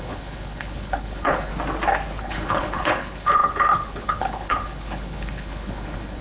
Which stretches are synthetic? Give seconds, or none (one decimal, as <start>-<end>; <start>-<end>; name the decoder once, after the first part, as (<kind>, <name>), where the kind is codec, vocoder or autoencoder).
0.0-1.5 (codec, HILCodec); 2.2-6.2